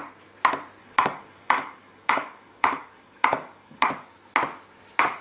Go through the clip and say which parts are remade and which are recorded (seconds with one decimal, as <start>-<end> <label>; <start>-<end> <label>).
0.0-0.8 recorded; 0.8-3.9 remade; 3.9-5.2 recorded